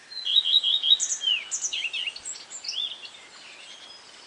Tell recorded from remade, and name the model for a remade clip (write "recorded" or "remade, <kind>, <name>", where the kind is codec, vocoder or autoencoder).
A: recorded